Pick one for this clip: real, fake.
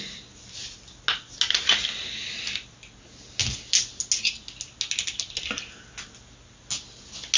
real